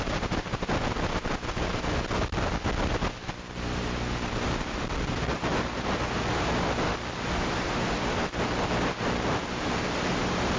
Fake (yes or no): no